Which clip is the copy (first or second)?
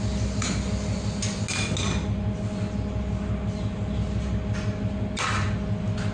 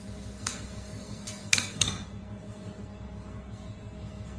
second